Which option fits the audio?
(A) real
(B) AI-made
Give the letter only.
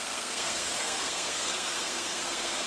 B